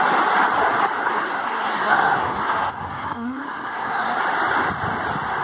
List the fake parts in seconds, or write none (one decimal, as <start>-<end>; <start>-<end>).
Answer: 1.0-4.2